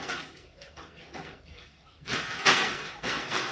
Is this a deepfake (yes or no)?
yes